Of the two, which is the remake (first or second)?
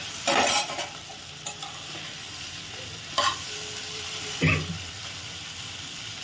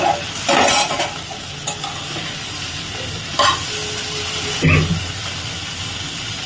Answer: first